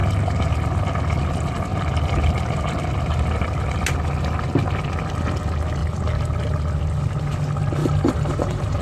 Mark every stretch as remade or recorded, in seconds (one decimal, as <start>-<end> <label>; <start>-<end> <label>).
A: 0.0-7.8 recorded; 7.8-8.8 remade